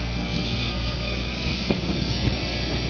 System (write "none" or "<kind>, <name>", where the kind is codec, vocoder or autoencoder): codec, SNAC